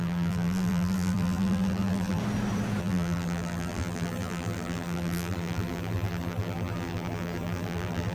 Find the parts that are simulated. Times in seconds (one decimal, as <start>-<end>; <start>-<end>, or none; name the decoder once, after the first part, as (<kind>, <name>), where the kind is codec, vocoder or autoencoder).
0.0-2.2 (vocoder, BigVGAN v2); 2.8-8.1